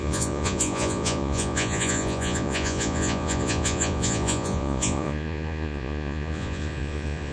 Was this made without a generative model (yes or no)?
no